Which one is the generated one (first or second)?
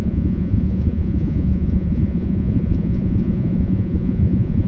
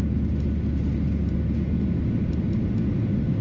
first